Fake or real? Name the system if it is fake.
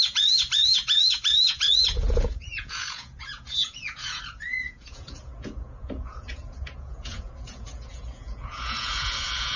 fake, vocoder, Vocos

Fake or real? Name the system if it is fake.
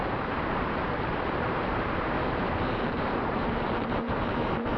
fake, vocoder, BigVGAN v2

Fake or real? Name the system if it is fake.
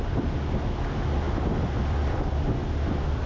real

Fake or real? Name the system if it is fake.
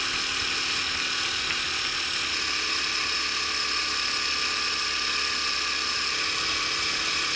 real